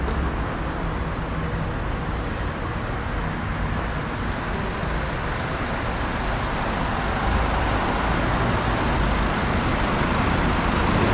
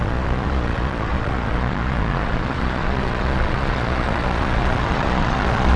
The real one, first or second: first